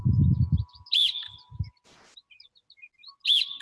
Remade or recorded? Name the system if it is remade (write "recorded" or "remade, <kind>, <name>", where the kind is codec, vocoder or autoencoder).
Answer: recorded